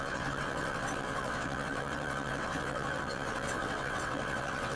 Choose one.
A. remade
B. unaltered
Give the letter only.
A